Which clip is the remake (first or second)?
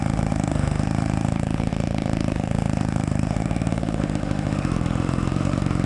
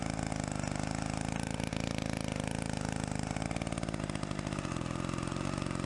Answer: first